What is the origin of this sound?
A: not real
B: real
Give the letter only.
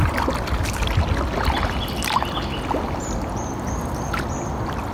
B